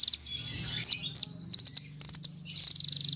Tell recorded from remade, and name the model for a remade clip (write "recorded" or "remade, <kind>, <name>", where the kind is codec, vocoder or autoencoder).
recorded